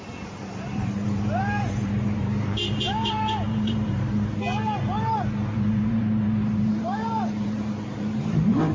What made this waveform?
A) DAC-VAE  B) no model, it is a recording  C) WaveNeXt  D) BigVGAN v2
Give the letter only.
D